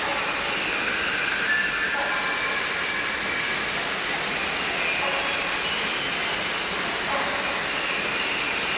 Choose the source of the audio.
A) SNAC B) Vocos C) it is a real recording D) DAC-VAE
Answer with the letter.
C